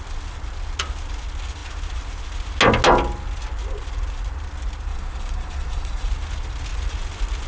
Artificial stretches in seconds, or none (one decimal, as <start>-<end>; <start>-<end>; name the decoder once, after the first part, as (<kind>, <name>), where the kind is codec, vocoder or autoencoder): 4.9-6.1 (vocoder, Vocos)